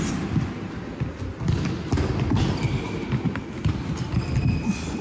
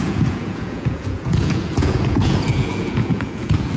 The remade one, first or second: second